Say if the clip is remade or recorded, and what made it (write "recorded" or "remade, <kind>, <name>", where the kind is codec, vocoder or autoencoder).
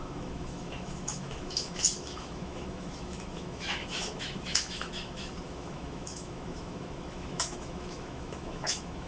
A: remade, autoencoder, DAC-VAE